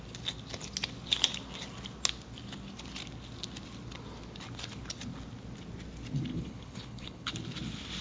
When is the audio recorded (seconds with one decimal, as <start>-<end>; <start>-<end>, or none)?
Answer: 0.0-6.3; 7.3-8.0

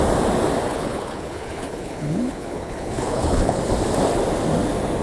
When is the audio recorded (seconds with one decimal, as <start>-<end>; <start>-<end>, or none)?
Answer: 0.0-0.7; 3.7-5.0

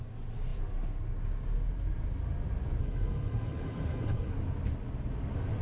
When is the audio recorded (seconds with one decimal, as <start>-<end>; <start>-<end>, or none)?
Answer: 0.0-2.8; 4.3-5.6

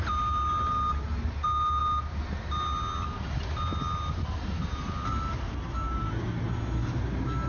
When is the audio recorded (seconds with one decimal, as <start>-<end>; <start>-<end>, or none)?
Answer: 0.0-7.5